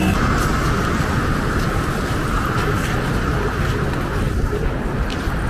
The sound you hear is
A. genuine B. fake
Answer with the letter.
A